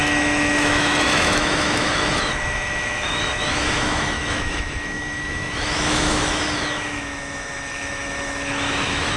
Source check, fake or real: fake